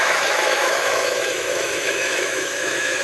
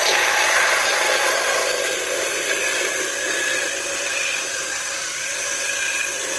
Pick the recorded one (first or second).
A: second